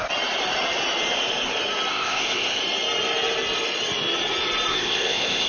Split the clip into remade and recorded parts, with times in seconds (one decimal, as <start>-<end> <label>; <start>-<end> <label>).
0.0-1.9 recorded; 1.9-2.6 remade; 2.6-4.7 recorded; 4.7-5.5 remade